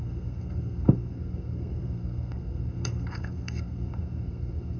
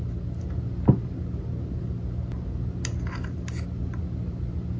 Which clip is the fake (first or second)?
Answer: first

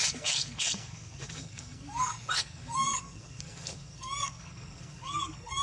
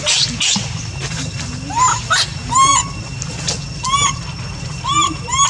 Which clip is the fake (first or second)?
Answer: first